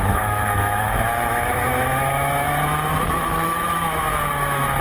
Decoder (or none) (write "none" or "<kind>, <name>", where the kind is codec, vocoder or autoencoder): autoencoder, DAC-VAE